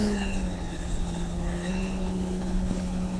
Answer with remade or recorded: remade